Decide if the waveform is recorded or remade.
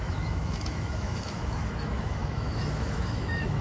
remade